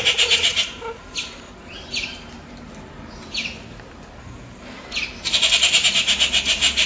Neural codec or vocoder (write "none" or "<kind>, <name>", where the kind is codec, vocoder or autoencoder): none